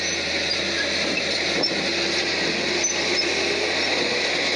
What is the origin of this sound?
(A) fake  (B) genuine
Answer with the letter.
B